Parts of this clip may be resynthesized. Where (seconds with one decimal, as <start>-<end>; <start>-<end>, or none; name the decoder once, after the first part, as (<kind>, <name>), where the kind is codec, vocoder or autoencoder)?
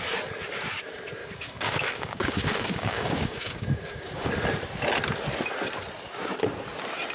1.2-4.3 (codec, DAC)